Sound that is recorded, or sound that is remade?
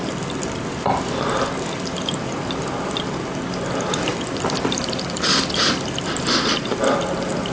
recorded